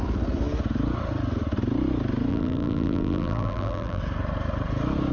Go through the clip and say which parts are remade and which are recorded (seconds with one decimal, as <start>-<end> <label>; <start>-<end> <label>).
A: 0.0-2.3 recorded; 2.3-4.0 remade; 4.0-5.1 recorded